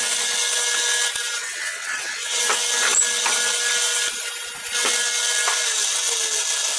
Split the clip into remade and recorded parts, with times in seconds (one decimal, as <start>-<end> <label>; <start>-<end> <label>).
0.0-1.4 recorded; 1.4-2.4 remade; 2.4-6.8 recorded